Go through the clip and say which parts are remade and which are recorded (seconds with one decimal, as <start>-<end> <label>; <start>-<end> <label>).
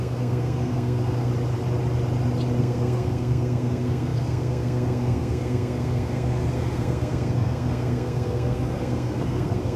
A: 0.0-1.3 remade; 1.3-2.6 recorded; 2.6-9.8 remade